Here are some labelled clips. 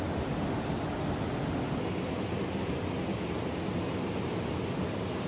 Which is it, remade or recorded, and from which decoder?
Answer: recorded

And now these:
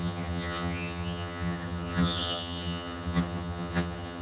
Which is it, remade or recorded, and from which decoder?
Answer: remade, vocoder, HiFi-GAN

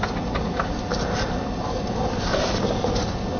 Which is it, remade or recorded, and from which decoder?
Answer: recorded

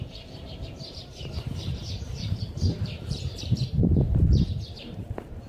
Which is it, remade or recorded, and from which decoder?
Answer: remade, vocoder, BigVGAN v2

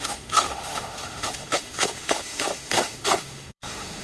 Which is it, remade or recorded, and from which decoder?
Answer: remade, autoencoder, DAC-VAE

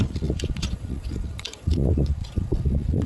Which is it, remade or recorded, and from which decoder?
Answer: remade, vocoder, Vocos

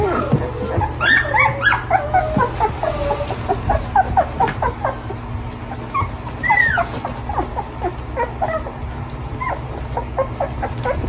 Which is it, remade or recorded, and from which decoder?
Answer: recorded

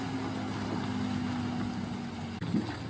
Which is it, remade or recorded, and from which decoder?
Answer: recorded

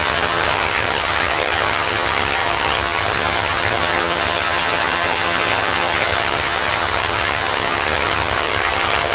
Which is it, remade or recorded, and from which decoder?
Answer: remade, vocoder, HiFi-GAN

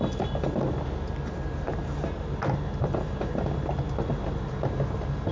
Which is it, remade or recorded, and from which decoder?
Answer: recorded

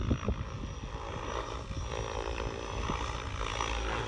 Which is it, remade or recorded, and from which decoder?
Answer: recorded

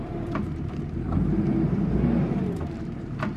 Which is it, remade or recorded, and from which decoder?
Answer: remade, vocoder, BigVGAN v2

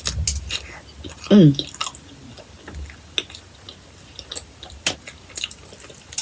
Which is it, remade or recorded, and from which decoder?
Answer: recorded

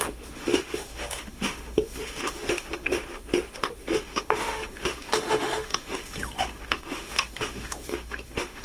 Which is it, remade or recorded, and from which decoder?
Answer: remade, autoencoder, DAC-VAE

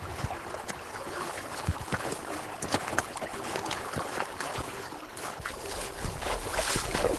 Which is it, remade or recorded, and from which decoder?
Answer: remade, codec, HILCodec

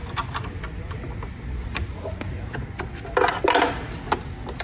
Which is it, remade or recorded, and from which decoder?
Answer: recorded